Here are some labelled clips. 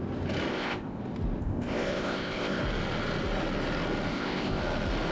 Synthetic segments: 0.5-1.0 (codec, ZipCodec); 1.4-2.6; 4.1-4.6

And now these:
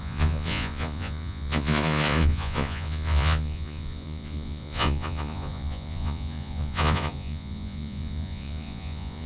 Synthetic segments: 0.0-9.3 (vocoder, Vocos)

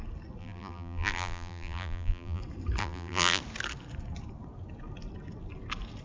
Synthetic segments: 0.4-2.4 (vocoder, BigVGAN v2); 2.8-3.4

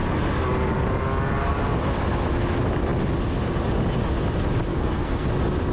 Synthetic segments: 4.7-5.3 (codec, SNAC)

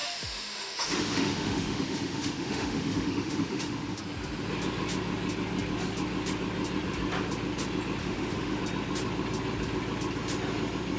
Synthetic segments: 0.0-4.0 (autoencoder, DAC-VAE); 8.0-8.6

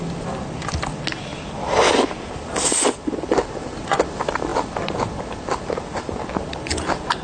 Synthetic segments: none

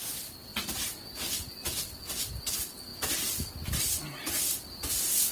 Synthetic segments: none